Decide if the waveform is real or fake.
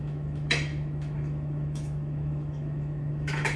fake